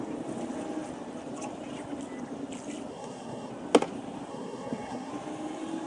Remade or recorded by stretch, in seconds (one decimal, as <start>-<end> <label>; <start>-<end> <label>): 0.0-2.9 recorded; 2.9-3.5 remade; 3.5-4.3 recorded; 4.3-5.1 remade; 5.1-5.9 recorded